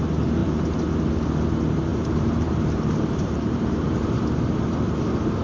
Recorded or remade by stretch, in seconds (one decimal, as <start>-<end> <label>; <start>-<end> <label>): 0.0-0.4 recorded; 0.4-1.0 remade; 1.0-1.9 recorded; 1.9-4.2 remade; 4.2-5.4 recorded